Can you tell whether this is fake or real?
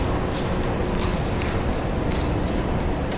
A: real